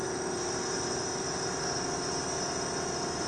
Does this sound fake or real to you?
real